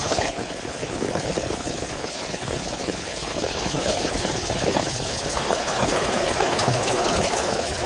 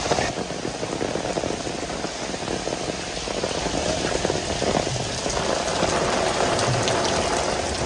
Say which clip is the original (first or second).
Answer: second